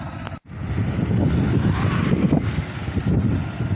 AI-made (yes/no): no